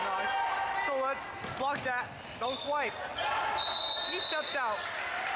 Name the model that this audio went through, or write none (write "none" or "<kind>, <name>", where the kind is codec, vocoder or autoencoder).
none